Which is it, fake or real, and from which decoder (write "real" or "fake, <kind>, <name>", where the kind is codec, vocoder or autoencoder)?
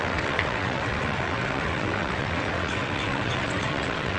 fake, vocoder, WaveNeXt